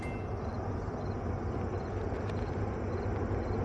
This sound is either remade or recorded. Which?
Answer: recorded